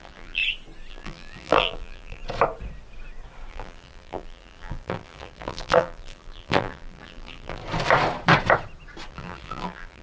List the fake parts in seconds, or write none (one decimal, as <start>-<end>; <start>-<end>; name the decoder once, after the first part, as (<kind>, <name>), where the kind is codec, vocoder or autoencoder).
0.0-0.4 (vocoder, BigVGAN v2); 0.9-2.2; 3.5-7.6; 9.1-10.0